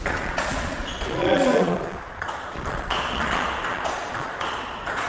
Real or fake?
fake